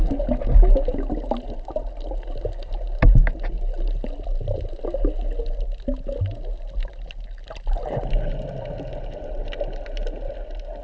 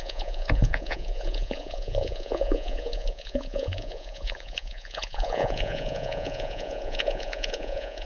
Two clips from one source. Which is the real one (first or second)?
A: first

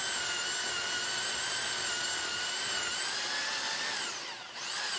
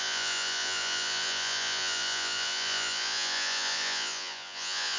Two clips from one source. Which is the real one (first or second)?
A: first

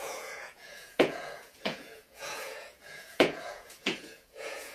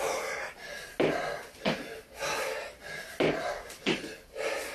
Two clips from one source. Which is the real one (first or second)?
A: second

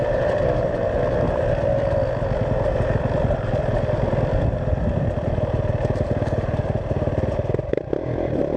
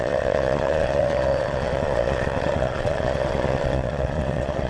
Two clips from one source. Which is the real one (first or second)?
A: first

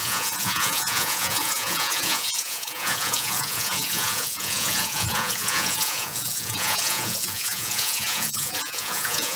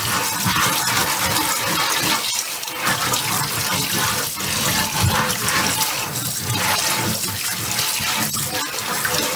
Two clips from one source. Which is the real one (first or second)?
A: second